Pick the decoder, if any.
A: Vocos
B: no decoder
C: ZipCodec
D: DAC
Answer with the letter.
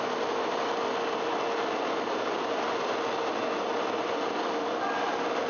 B